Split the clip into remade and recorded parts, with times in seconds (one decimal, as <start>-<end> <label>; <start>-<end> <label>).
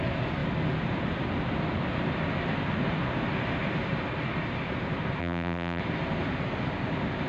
0.0-5.2 recorded; 5.2-5.8 remade; 5.8-7.3 recorded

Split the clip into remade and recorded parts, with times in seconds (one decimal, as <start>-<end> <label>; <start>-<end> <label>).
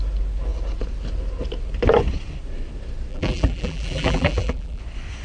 0.0-3.1 recorded; 3.1-4.8 remade; 4.8-5.2 recorded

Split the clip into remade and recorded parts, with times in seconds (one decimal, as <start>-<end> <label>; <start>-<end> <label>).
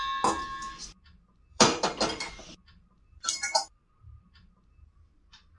0.0-1.5 recorded; 1.5-4.5 remade; 4.5-5.6 recorded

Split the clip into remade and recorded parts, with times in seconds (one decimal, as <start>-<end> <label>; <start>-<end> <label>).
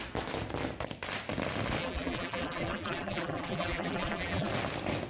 0.0-1.8 recorded; 1.8-4.5 remade; 4.5-5.1 recorded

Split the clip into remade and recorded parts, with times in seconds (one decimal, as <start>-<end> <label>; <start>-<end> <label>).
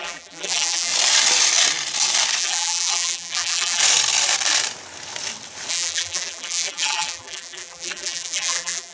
0.0-0.9 remade; 0.9-2.4 recorded; 2.4-3.8 remade; 3.8-5.7 recorded; 5.7-8.9 remade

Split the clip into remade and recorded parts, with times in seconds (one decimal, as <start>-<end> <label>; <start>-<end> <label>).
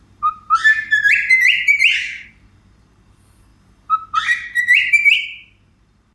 0.0-3.5 remade; 3.5-4.1 recorded; 4.1-6.1 remade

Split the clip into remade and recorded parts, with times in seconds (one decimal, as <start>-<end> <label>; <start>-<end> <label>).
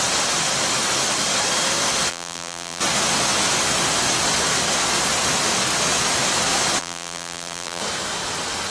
0.0-2.1 recorded; 2.1-2.8 remade; 2.8-6.8 recorded; 6.8-7.8 remade; 7.8-8.7 recorded